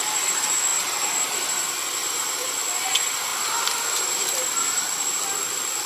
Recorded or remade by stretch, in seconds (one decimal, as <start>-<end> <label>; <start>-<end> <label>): 0.0-2.0 recorded; 2.0-2.5 remade; 2.5-3.3 recorded; 3.3-4.7 remade; 4.7-5.9 recorded